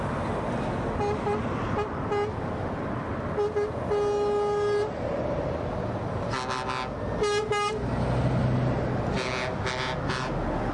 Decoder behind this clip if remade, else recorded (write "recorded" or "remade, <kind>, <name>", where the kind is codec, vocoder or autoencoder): recorded